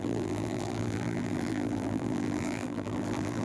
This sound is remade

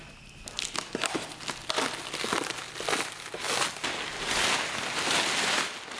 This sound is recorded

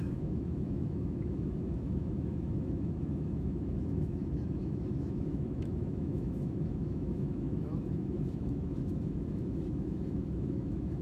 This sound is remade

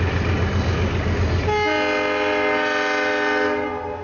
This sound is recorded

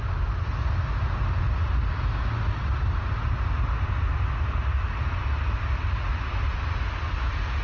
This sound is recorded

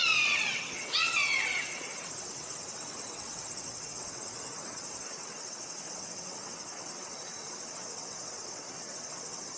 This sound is remade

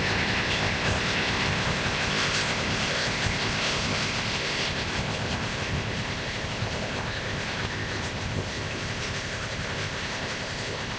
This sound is remade